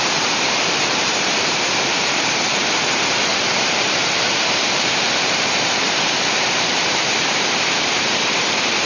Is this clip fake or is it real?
fake